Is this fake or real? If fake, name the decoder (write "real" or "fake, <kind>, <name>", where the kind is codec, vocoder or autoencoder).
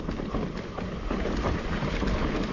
real